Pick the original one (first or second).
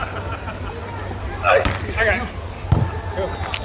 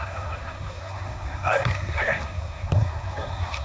first